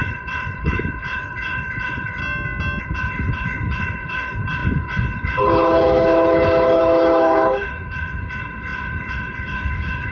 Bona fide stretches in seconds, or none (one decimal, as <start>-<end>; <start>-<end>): 2.2-2.8

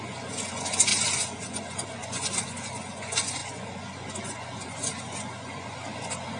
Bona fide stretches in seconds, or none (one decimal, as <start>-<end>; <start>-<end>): none

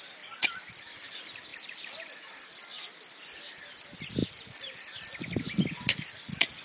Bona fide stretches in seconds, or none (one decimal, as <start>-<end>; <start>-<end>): 0.0-6.6

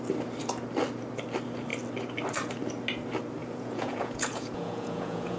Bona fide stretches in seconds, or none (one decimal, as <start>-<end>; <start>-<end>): 0.0-3.4

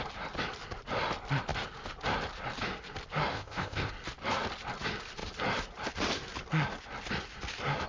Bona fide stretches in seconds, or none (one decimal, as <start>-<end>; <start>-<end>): 0.0-3.3; 3.9-7.9